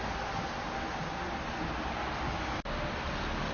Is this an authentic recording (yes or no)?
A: yes